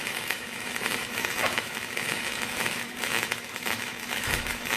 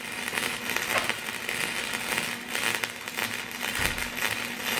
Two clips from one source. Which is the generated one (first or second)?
first